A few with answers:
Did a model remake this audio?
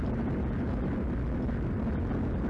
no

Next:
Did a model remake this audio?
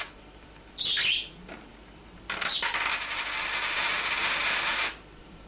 yes